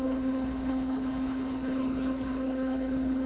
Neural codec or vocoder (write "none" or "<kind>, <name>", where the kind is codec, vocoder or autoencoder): codec, HILCodec